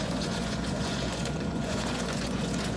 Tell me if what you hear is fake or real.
fake